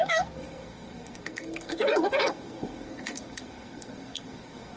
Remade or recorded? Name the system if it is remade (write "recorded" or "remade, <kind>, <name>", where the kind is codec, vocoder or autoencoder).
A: remade, codec, SNAC